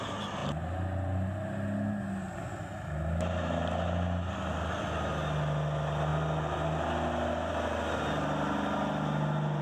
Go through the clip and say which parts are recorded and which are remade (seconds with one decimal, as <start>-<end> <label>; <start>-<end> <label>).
0.0-9.6 recorded